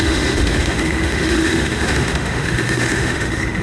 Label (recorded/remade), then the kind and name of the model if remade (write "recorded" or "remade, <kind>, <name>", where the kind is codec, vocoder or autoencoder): remade, autoencoder, DAC-VAE